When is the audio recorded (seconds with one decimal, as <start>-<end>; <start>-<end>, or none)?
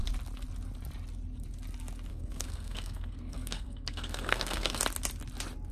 0.0-2.1; 4.8-5.7